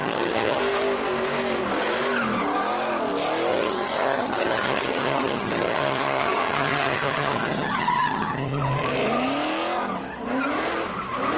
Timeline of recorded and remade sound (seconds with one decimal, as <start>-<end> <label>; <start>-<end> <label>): 0.0-0.6 remade; 0.6-3.5 recorded; 3.5-8.6 remade; 8.6-11.4 recorded